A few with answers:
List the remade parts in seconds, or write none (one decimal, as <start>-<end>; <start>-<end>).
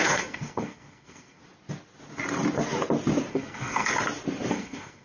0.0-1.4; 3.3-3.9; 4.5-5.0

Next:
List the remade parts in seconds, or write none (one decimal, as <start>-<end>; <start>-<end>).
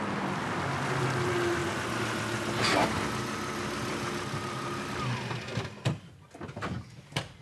none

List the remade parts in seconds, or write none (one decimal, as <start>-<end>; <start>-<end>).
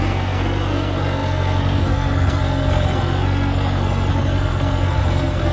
0.0-5.5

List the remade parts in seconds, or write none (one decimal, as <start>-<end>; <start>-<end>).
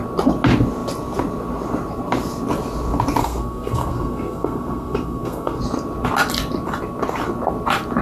3.2-5.6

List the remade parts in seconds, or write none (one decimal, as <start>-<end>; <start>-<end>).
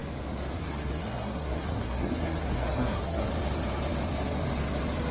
0.6-3.3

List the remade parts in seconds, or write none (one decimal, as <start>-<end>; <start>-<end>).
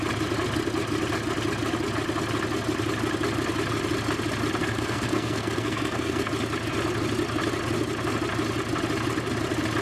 4.6-6.3